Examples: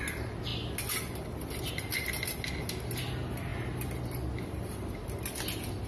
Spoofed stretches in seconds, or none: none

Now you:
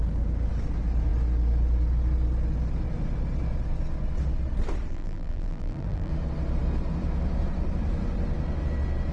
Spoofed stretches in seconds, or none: 4.9-6.1 (vocoder, BigVGAN v2)

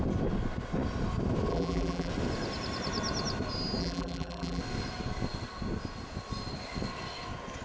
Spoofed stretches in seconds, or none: 1.5-2.1 (vocoder, BigVGAN v2); 3.8-4.6

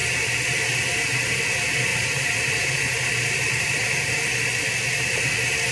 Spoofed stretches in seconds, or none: 1.9-4.2 (vocoder, BigVGAN v2)